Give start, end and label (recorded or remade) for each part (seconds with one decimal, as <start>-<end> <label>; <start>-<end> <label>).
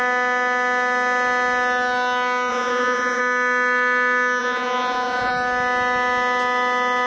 0.0-2.5 recorded; 2.5-3.2 remade; 3.2-4.4 recorded; 4.4-5.3 remade; 5.3-7.1 recorded